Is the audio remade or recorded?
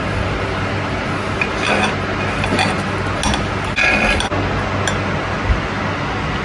recorded